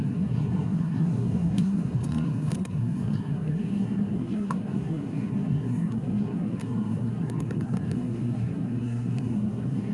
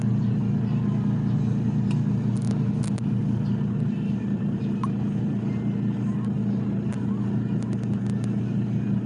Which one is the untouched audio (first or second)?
second